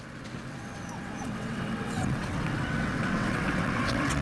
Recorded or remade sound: remade